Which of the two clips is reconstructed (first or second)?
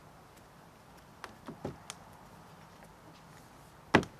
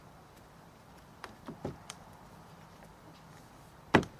second